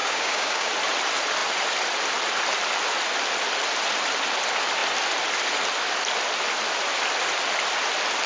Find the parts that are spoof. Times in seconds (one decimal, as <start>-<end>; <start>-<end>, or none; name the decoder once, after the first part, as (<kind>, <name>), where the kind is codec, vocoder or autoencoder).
0.0-0.7 (codec, DAC)